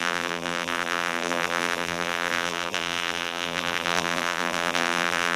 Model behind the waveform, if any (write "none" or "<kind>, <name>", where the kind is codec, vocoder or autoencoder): vocoder, BigVGAN v2